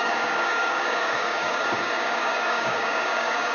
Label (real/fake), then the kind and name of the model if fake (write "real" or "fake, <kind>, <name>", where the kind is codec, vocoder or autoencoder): fake, codec, DAC